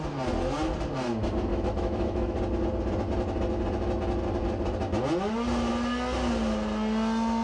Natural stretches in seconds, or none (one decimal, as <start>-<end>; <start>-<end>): 0.0-1.5; 2.4-7.4